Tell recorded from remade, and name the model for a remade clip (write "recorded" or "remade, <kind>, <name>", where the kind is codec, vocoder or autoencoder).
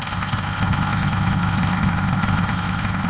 remade, codec, ZipCodec